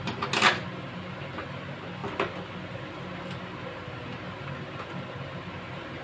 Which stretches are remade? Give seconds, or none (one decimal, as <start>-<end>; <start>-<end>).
none